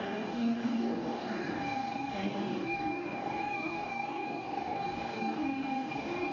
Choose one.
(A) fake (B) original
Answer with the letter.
A